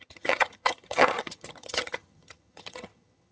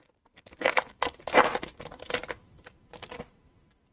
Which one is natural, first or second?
second